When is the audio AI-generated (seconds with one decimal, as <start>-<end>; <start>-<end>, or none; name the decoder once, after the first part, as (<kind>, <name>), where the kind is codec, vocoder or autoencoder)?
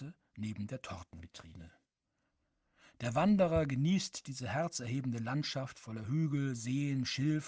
1.1-1.9 (codec, ZipCodec)